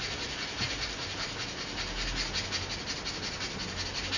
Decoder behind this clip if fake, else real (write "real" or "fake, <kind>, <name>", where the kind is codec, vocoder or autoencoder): real